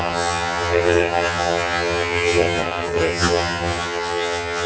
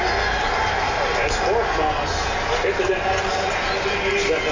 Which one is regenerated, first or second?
first